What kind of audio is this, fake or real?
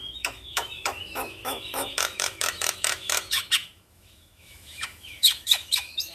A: fake